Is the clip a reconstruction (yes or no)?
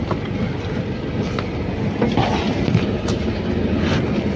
no